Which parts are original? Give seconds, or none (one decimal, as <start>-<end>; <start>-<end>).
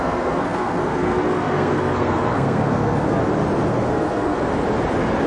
3.2-3.7; 4.5-5.3